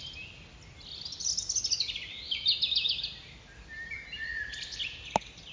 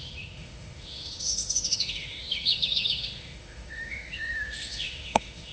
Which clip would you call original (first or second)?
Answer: first